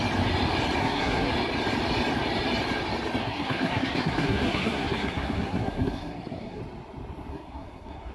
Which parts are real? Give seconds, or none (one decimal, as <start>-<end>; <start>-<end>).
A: 0.0-0.8; 1.3-3.2; 6.6-7.3